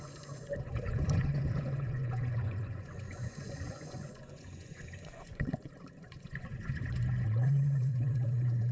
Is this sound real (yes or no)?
no